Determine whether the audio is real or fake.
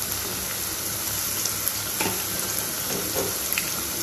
real